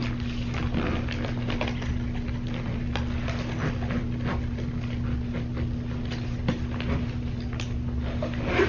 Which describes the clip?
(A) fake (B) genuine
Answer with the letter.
B